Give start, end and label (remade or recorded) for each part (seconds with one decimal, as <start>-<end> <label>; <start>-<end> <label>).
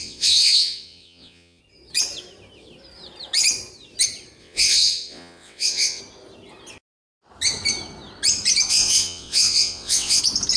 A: 0.0-1.6 remade; 1.6-4.4 recorded; 4.4-6.0 remade; 6.0-8.7 recorded; 8.7-10.2 remade; 10.2-10.6 recorded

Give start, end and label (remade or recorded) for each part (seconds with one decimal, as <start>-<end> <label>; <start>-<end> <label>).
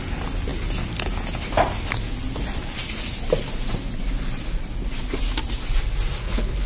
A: 0.0-6.2 recorded; 6.2-6.7 remade